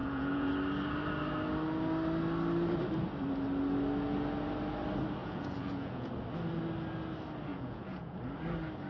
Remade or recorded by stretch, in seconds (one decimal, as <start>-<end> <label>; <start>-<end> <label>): 0.0-0.5 remade; 0.5-5.2 recorded; 5.2-6.1 remade; 6.1-7.5 recorded; 7.5-8.2 remade; 8.2-8.9 recorded